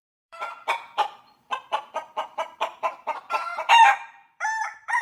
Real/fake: fake